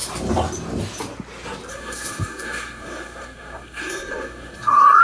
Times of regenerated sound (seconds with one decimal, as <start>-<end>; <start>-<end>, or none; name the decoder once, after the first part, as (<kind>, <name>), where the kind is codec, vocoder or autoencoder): 1.7-5.0 (codec, SNAC)